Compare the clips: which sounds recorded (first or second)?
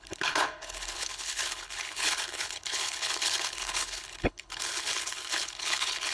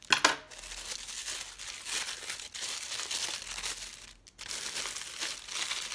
second